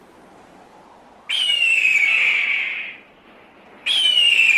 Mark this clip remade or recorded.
recorded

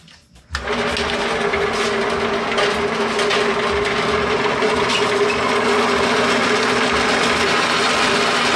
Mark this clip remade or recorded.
recorded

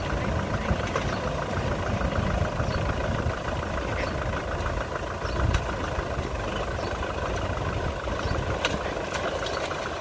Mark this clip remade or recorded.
recorded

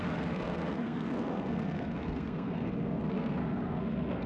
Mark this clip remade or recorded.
remade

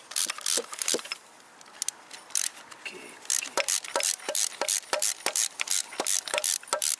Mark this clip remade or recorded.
recorded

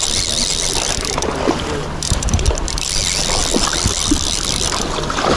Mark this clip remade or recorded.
recorded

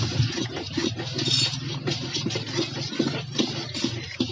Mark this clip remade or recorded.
recorded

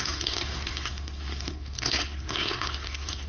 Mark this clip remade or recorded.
remade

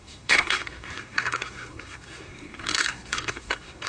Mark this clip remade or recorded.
remade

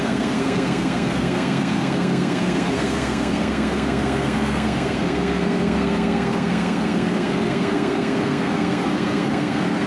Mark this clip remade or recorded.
remade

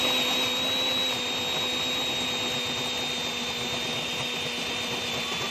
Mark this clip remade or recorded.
recorded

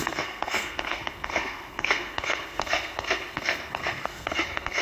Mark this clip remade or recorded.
remade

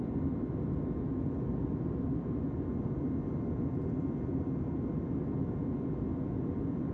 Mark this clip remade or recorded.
recorded